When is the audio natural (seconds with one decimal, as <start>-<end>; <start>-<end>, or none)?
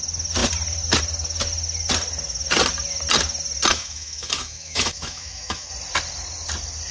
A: 0.0-3.7; 5.7-6.9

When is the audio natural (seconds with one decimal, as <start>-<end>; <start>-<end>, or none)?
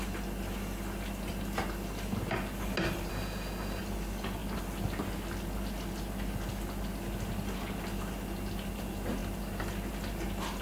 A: 0.0-3.1; 3.8-10.6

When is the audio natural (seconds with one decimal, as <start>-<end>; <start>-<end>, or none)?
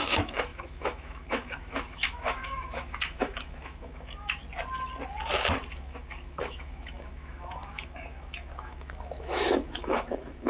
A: 4.4-5.7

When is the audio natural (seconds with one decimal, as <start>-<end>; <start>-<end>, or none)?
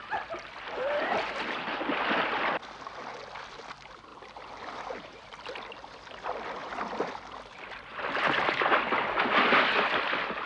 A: 0.0-10.5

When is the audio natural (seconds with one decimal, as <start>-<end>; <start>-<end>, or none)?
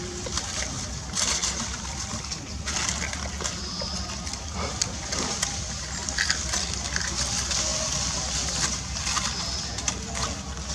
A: 0.0-10.7